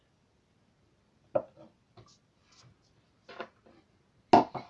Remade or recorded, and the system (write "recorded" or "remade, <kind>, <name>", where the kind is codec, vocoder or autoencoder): recorded